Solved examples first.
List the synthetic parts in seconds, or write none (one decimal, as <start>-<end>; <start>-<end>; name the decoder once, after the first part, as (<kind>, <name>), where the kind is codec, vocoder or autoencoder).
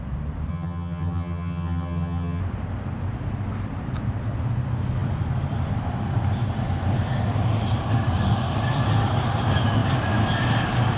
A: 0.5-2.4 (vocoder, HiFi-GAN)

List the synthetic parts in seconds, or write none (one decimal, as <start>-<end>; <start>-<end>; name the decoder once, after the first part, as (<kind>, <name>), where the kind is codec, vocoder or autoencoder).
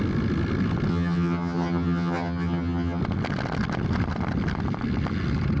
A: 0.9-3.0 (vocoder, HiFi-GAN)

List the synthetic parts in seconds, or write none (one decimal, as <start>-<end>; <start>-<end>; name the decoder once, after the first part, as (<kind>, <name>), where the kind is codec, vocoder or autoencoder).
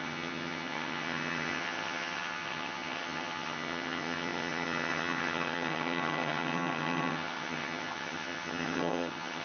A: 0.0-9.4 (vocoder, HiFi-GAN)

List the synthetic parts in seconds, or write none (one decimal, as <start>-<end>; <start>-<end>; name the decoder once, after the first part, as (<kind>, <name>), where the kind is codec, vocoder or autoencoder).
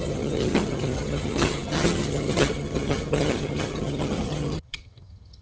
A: 0.0-5.4 (vocoder, HiFi-GAN)